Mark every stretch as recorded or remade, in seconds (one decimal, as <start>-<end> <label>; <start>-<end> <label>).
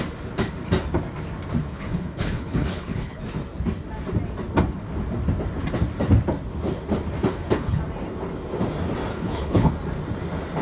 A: 0.0-1.7 recorded; 1.7-3.2 remade; 3.2-7.3 recorded; 7.3-7.8 remade; 7.8-9.1 recorded; 9.1-9.7 remade; 9.7-10.6 recorded